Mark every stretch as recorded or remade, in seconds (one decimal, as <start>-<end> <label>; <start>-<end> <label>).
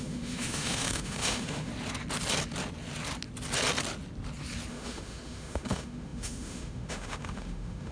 0.0-1.7 remade; 1.7-4.7 recorded; 4.7-7.9 remade